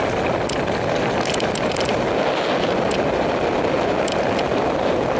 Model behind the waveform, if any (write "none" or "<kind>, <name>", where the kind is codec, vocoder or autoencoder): none